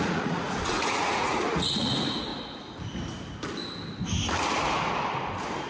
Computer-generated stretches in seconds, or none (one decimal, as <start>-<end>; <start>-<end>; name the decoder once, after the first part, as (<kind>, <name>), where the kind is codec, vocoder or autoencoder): 0.0-2.3 (vocoder, Vocos)